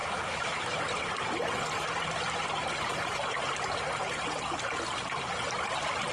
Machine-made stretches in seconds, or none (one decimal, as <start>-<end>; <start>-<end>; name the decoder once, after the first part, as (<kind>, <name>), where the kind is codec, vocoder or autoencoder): 0.0-0.8 (autoencoder, DAC-VAE)